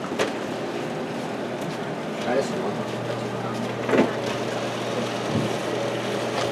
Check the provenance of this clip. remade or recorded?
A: recorded